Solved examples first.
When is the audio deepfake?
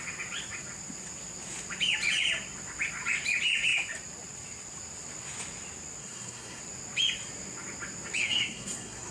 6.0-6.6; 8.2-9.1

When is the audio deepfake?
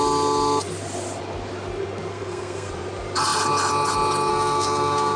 2.1-2.7; 4.3-5.2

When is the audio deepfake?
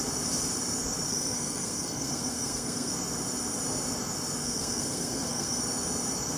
1.1-2.9; 4.4-5.6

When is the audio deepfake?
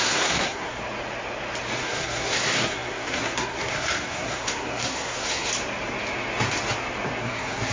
0.0-0.8; 1.8-5.5; 7.2-7.7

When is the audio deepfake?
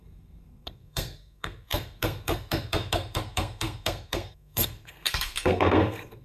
0.0-6.2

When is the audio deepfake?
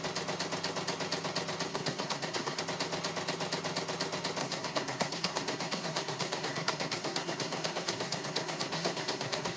1.7-2.6; 4.4-9.6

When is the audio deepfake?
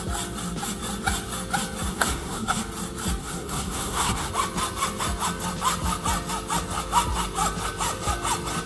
1.9-2.6; 3.2-4.3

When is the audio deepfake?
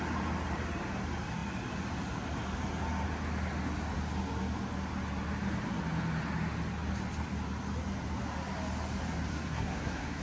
9.3-10.2